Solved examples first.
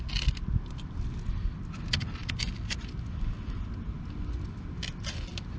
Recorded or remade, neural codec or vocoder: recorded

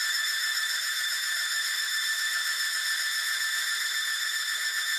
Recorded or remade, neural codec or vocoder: remade, autoencoder, DAC-VAE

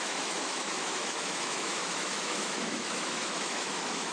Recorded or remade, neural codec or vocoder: remade, autoencoder, DAC-VAE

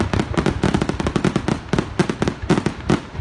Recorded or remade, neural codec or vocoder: remade, vocoder, BigVGAN v2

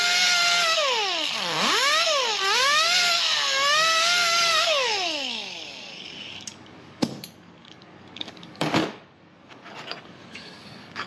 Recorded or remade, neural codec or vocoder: remade, codec, DAC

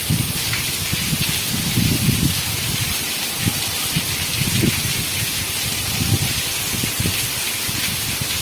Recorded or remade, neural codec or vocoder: recorded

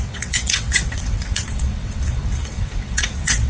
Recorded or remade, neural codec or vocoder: remade, vocoder, WaveNeXt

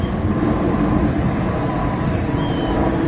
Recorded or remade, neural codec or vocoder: recorded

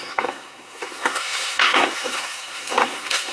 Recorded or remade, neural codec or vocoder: remade, codec, SNAC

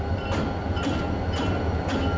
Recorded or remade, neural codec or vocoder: recorded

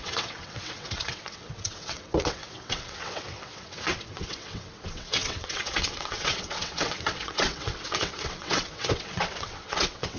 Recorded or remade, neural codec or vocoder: remade, vocoder, WaveNeXt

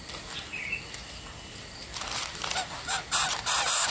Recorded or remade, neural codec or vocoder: recorded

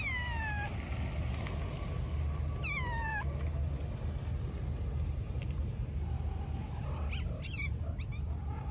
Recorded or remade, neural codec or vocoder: recorded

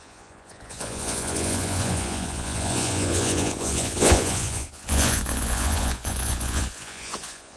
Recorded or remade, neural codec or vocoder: remade, vocoder, Vocos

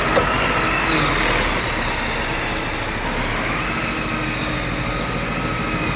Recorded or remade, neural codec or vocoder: recorded